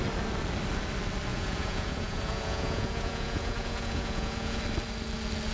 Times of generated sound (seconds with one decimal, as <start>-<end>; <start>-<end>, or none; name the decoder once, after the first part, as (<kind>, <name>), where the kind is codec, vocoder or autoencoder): 1.3-4.6 (vocoder, Vocos)